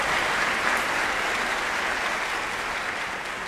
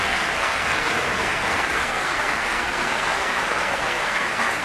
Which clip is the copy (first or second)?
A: second